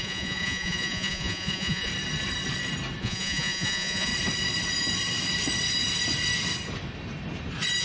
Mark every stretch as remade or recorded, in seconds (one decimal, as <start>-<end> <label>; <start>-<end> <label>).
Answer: 0.0-1.9 remade; 1.9-3.0 recorded; 3.0-4.1 remade; 4.1-7.8 recorded